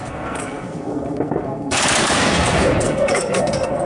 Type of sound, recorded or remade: remade